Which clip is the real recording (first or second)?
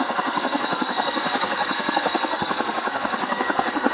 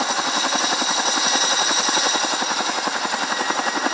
second